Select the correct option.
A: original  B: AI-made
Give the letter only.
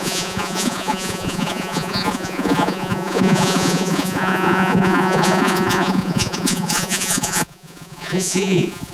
B